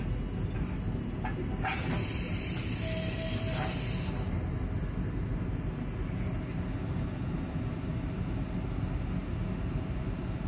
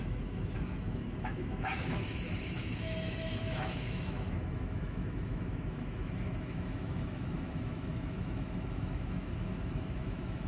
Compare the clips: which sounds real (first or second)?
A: first